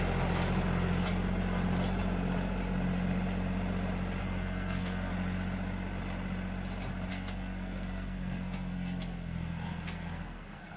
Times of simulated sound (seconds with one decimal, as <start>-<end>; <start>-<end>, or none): 4.2-5.1; 7.1-10.8